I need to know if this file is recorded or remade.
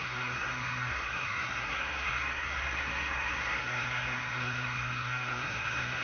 remade